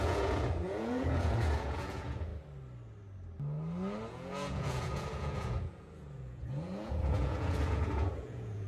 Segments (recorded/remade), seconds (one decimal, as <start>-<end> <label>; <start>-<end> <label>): 0.0-2.3 remade; 2.3-4.1 recorded; 4.1-8.7 remade